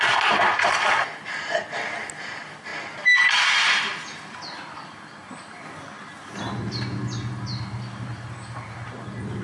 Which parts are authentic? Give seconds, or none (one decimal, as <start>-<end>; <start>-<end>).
0.0-9.4

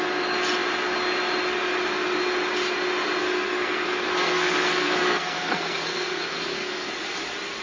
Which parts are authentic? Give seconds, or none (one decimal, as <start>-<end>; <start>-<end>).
0.0-3.2; 6.9-7.6